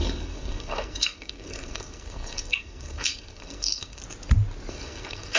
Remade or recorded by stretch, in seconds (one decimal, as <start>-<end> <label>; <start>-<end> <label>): 0.0-4.0 remade; 4.0-4.7 recorded; 4.7-5.4 remade